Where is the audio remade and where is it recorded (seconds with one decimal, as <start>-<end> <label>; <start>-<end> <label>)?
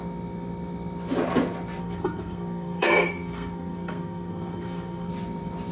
0.0-1.8 recorded; 1.8-5.1 remade; 5.1-5.7 recorded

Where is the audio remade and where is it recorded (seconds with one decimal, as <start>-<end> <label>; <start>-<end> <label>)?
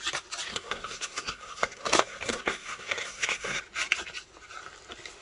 0.0-0.5 recorded; 0.5-3.6 remade; 3.6-5.2 recorded